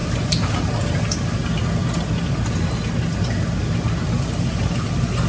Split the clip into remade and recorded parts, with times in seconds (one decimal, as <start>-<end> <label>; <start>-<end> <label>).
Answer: 0.0-0.6 remade; 0.6-5.3 recorded